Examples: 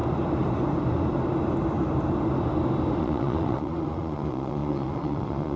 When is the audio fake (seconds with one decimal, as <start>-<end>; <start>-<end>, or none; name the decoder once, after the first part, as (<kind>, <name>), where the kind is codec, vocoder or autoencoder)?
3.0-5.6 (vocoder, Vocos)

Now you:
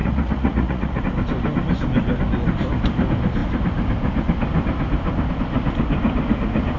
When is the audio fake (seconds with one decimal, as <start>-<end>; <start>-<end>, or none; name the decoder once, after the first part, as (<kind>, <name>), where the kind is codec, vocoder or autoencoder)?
0.0-1.0 (vocoder, Vocos)

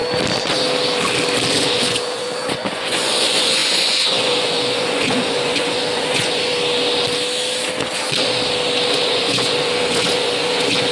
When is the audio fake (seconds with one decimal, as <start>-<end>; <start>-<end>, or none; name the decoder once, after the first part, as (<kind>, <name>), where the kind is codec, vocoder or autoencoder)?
1.5-6.5 (vocoder, Vocos); 8.9-10.9